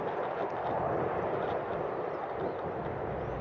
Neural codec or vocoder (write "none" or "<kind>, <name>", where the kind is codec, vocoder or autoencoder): none